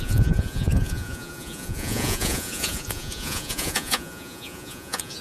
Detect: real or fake fake